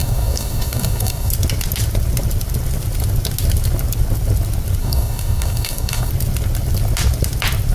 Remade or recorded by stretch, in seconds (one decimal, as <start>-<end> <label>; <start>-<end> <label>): 0.0-1.3 remade; 1.3-4.8 recorded; 4.8-6.1 remade; 6.1-7.7 recorded